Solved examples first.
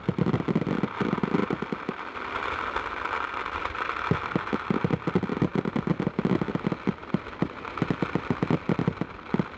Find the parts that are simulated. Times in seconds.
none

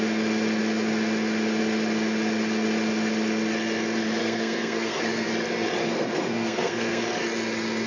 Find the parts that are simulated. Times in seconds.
4.2-5.0 (codec, SNAC); 5.8-7.0